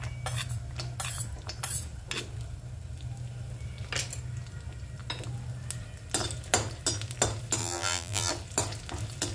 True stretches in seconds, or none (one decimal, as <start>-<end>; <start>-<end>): 0.0-7.6; 8.3-9.3